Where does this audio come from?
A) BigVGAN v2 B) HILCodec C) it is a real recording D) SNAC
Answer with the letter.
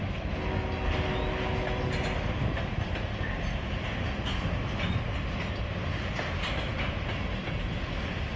C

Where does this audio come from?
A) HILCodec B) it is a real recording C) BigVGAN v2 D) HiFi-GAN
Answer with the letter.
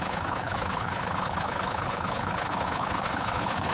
A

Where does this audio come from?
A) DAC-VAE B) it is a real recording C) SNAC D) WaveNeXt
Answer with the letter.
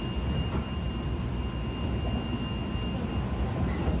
B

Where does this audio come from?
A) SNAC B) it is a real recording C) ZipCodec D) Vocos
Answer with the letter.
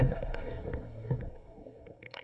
A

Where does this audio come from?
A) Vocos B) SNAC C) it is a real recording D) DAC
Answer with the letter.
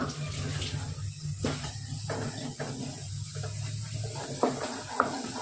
C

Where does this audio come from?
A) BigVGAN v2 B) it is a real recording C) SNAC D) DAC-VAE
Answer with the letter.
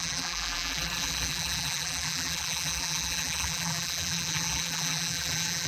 A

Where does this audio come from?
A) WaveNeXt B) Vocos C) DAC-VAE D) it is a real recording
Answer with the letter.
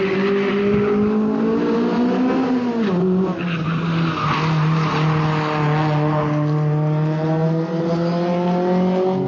D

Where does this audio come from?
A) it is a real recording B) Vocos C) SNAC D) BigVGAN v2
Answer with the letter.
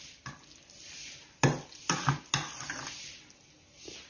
A